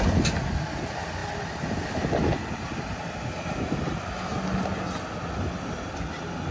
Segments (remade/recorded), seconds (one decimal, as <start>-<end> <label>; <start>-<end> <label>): 0.0-6.5 recorded